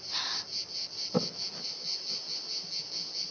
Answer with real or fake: real